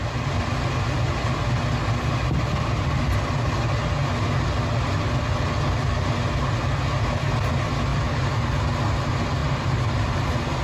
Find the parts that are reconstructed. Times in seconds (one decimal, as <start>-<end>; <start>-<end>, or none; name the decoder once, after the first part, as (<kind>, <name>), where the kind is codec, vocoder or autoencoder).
7.9-8.5 (vocoder, BigVGAN v2); 9.4-10.2